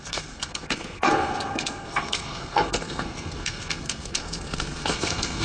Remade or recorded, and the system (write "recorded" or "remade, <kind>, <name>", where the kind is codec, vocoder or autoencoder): remade, codec, SNAC